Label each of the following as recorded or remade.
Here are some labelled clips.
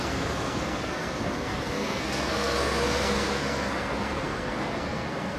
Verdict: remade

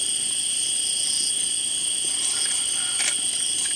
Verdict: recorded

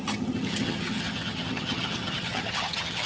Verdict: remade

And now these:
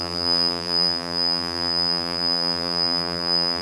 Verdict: remade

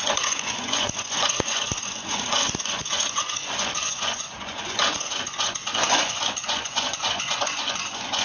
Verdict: remade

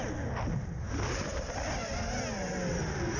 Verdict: recorded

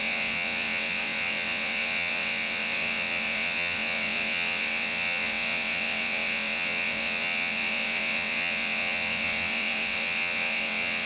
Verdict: remade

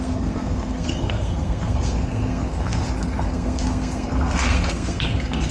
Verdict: remade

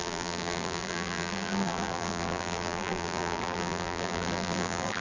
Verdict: remade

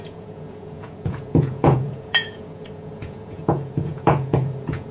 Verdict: remade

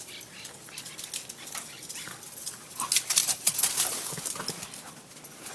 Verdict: recorded